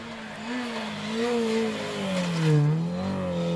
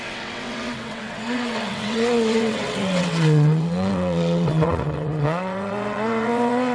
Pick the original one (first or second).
first